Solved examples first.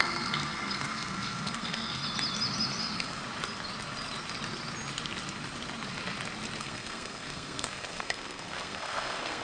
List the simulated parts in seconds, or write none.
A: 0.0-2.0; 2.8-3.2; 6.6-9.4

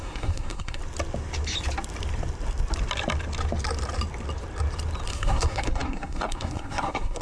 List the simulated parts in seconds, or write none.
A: 0.0-0.8; 5.1-7.2